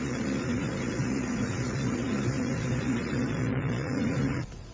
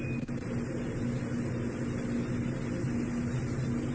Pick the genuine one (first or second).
second